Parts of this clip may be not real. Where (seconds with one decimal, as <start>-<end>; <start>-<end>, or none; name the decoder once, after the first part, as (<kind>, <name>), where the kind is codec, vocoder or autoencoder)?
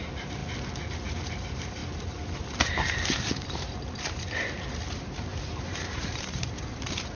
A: 0.0-0.4 (vocoder, BigVGAN v2); 1.1-1.8; 2.7-7.1